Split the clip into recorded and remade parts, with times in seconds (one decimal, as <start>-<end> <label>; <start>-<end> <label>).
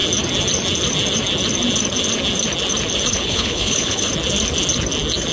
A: 0.0-3.1 recorded; 3.1-4.1 remade; 4.1-5.3 recorded